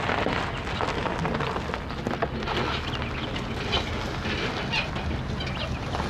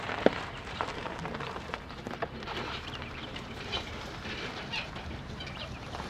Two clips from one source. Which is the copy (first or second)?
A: second